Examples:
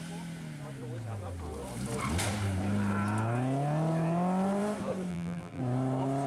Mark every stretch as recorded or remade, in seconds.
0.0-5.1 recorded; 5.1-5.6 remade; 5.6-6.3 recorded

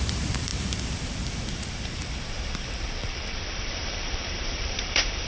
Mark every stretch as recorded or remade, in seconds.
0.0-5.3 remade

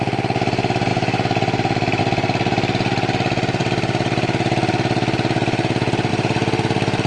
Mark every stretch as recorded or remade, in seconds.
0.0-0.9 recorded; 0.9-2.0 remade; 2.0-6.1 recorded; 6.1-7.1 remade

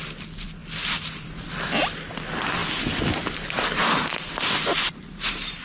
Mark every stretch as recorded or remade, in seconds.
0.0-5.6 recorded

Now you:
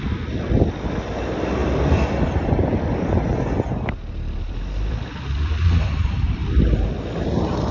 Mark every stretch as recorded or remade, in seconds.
0.0-6.4 remade; 6.4-7.7 recorded

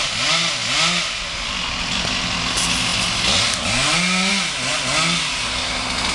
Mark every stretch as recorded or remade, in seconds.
0.0-6.1 recorded

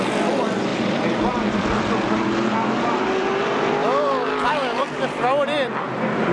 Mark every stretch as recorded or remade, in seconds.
0.0-6.3 remade

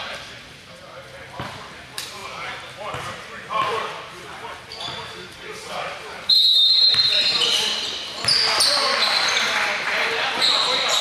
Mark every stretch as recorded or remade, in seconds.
0.0-11.0 remade